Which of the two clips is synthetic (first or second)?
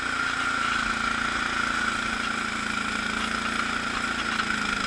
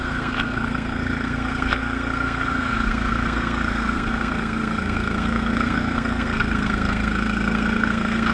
second